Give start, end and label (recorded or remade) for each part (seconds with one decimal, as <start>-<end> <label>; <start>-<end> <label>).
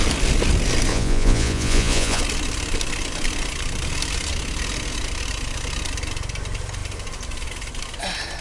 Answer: 0.0-0.9 recorded; 0.9-2.2 remade; 2.2-8.4 recorded